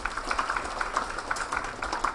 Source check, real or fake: real